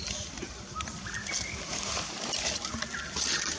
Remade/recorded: recorded